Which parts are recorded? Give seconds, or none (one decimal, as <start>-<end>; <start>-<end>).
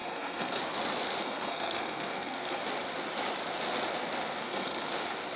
0.6-1.2; 2.6-4.4; 4.9-5.4